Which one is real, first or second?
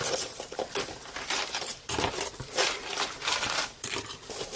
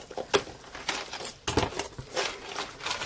second